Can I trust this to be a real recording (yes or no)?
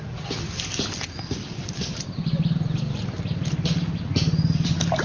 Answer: yes